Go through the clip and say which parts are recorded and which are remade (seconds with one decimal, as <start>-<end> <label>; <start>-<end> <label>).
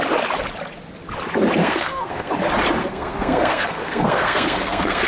0.0-1.6 recorded; 1.6-2.3 remade; 2.3-2.8 recorded; 2.8-5.1 remade